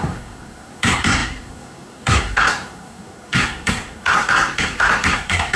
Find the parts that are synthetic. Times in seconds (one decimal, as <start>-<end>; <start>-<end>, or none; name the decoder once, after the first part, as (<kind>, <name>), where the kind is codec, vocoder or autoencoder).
0.0-5.6 (codec, SNAC)